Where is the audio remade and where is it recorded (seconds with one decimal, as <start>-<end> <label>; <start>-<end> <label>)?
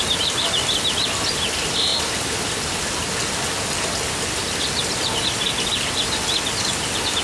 0.0-0.6 remade; 0.6-7.2 recorded